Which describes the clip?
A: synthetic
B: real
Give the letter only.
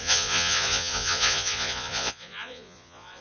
A